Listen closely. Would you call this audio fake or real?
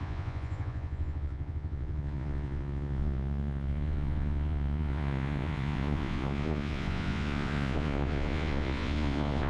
fake